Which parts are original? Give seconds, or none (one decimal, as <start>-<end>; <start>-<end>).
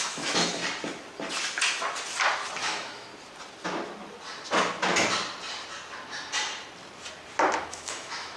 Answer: 0.6-2.6; 3.1-7.6